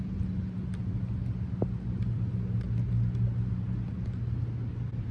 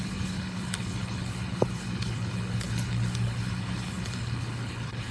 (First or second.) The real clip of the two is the first